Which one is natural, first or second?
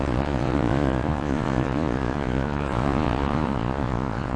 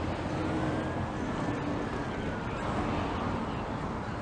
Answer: second